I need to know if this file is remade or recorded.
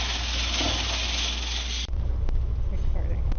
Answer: recorded